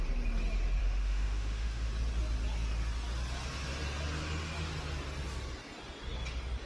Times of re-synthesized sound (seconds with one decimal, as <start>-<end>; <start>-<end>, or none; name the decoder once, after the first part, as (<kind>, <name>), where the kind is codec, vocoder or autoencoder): 0.8-1.9 (autoencoder, DAC-VAE)